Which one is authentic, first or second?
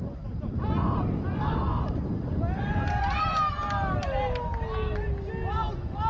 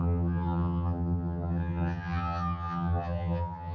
first